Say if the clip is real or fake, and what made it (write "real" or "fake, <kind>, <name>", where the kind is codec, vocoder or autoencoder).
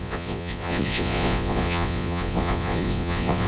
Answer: fake, vocoder, Vocos